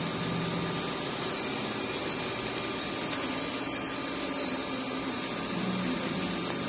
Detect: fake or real real